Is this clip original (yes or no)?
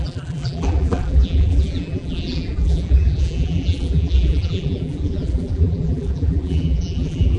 no